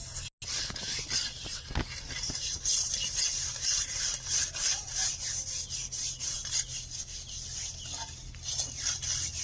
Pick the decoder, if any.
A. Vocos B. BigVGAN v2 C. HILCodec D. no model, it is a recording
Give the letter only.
D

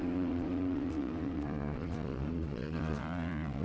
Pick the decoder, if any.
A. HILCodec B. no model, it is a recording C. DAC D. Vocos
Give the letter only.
D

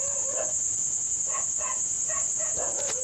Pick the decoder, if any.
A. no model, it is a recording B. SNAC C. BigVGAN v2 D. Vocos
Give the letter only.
D